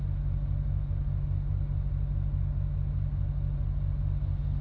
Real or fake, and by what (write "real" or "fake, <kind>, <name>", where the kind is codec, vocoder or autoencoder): real